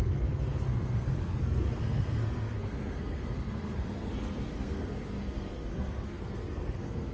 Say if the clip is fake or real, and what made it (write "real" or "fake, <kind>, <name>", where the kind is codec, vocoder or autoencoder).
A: fake, codec, SNAC